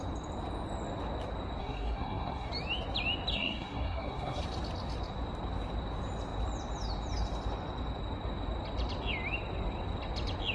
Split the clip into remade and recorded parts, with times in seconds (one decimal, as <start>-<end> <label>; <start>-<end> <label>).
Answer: 0.0-1.6 recorded; 1.6-2.5 remade; 2.5-3.3 recorded; 3.3-4.4 remade; 4.4-10.5 recorded